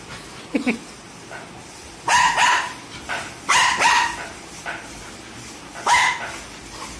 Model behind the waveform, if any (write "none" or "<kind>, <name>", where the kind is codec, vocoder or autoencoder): none